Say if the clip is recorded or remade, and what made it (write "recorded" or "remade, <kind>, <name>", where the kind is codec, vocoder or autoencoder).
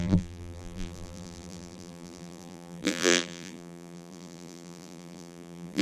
remade, vocoder, BigVGAN v2